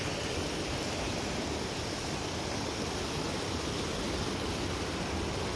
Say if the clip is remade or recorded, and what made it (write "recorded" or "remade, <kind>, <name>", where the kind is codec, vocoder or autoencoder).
recorded